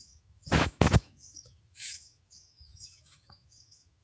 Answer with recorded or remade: remade